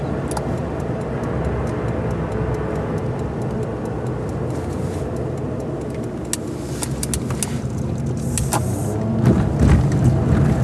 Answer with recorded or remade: recorded